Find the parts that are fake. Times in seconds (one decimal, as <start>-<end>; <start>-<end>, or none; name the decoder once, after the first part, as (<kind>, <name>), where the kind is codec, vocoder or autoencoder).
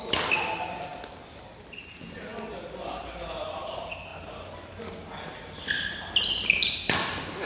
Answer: 4.1-4.8 (vocoder, BigVGAN v2)